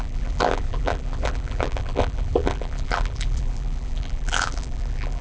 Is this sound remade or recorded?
remade